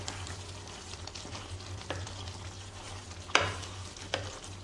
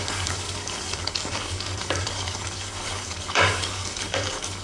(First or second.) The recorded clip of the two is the first